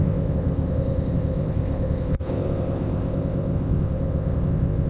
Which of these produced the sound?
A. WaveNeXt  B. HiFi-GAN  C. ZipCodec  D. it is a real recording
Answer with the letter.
C